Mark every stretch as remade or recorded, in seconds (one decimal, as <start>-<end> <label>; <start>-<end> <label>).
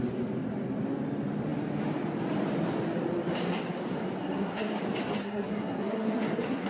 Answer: 0.0-4.2 recorded; 4.2-4.8 remade; 4.8-5.2 recorded; 5.2-6.7 remade